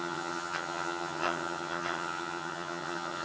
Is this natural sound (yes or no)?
no